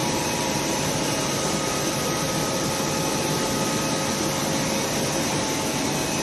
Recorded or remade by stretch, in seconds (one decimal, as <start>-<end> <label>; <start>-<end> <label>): 0.0-2.3 remade; 2.3-6.2 recorded